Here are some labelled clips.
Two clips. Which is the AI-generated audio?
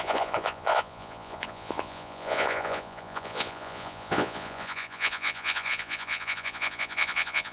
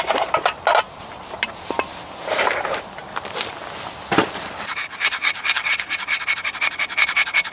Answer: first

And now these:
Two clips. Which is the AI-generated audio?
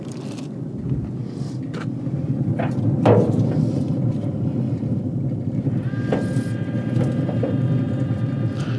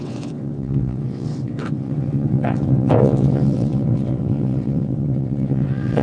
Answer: second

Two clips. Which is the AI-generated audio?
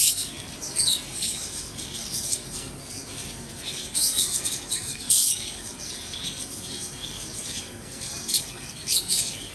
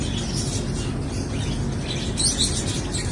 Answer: first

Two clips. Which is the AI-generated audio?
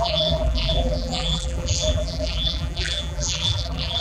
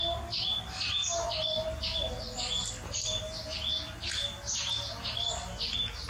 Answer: first